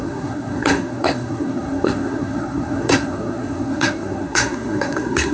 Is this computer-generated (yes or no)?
yes